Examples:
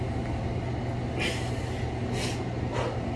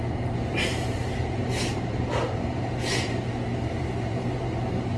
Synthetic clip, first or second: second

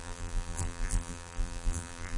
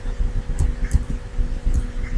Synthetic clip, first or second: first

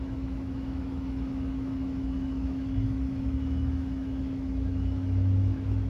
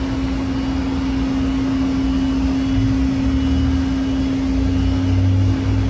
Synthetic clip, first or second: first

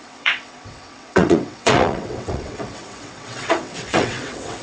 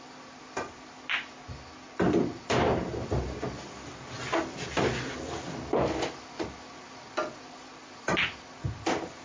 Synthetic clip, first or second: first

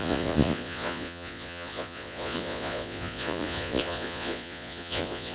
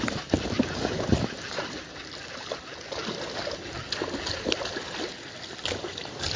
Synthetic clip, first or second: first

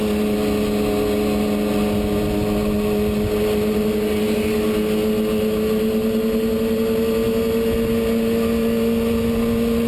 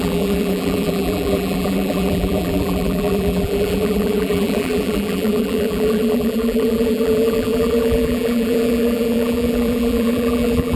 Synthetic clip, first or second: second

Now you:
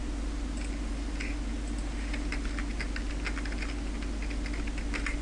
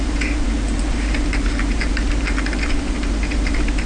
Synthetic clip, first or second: second